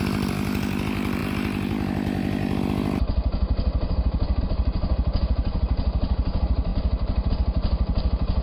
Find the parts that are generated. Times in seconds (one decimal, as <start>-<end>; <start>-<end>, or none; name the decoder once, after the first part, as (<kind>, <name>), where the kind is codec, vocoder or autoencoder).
none